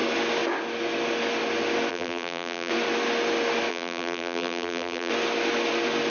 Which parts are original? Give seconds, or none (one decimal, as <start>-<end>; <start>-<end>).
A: 0.0-1.9; 2.7-3.7; 5.1-6.1